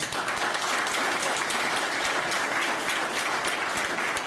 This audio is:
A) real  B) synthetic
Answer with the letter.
A